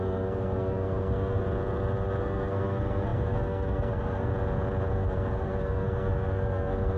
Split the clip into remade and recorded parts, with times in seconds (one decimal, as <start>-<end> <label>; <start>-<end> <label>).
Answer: 0.0-1.4 remade; 1.4-2.2 recorded; 2.2-4.3 remade; 4.3-4.9 recorded; 4.9-7.0 remade